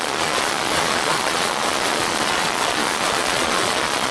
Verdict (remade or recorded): remade